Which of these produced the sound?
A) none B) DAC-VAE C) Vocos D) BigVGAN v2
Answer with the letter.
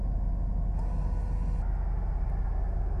A